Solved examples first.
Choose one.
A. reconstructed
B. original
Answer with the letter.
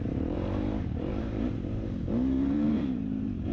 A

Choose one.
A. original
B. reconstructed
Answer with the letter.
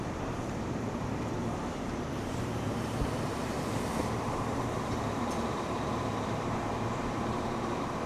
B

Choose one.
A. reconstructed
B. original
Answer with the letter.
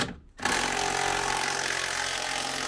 B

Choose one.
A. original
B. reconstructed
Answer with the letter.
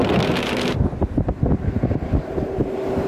A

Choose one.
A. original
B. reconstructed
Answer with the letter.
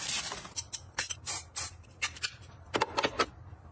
B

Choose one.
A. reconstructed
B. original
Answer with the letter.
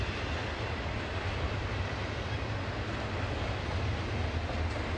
B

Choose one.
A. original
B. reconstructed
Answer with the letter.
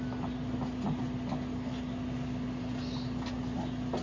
A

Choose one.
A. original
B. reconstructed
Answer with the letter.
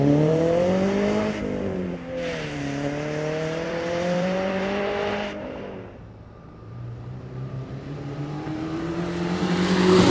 B